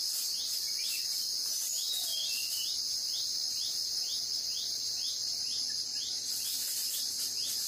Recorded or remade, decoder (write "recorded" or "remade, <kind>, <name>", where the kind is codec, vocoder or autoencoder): recorded